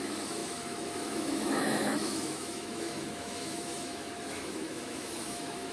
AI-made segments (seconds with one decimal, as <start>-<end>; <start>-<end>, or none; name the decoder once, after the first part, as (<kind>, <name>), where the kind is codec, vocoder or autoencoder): 0.0-5.7 (autoencoder, DAC-VAE)